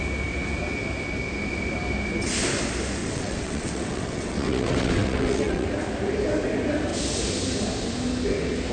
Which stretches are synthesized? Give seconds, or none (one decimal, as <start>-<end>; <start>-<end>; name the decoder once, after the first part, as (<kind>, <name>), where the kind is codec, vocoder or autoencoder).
3.0-5.7 (vocoder, WaveNeXt)